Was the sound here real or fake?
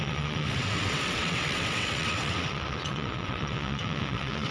fake